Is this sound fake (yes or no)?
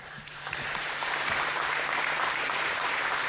yes